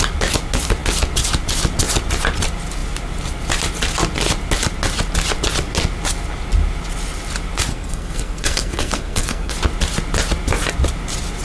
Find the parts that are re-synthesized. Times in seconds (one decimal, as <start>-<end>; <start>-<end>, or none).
7.7-9.5